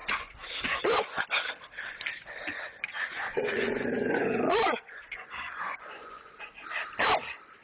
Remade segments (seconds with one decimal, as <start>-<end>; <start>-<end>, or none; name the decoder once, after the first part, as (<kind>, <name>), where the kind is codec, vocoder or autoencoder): 0.0-1.1 (vocoder, Vocos); 2.5-6.5